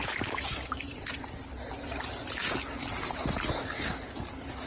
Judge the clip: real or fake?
real